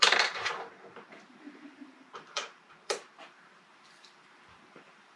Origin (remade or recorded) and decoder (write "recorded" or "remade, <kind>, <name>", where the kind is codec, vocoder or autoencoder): remade, vocoder, BigVGAN v2